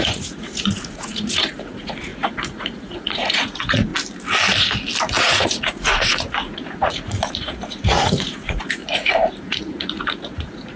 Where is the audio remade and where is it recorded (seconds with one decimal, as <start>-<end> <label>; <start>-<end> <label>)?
0.0-3.9 remade; 3.9-5.2 recorded; 5.2-8.8 remade; 8.8-9.4 recorded; 9.4-10.8 remade